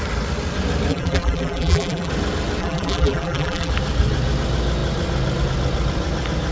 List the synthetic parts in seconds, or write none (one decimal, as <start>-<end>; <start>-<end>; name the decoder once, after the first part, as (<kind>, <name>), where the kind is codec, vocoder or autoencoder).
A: 0.9-2.1 (vocoder, BigVGAN v2); 2.6-3.7